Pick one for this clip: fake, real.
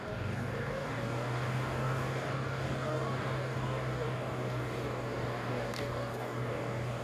fake